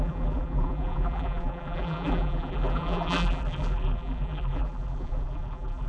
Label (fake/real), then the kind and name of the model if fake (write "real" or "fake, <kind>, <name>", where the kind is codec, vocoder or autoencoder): fake, vocoder, BigVGAN v2